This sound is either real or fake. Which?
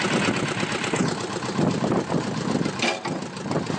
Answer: real